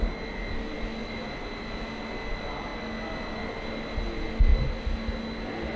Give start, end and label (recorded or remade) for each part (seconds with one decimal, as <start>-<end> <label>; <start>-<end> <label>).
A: 0.0-5.8 recorded